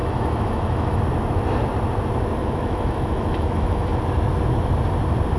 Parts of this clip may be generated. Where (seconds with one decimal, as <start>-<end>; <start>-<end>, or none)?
0.0-1.0; 2.4-4.0